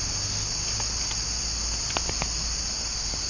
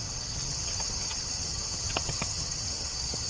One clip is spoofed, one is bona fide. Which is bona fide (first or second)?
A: first